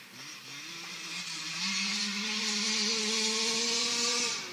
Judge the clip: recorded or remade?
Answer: recorded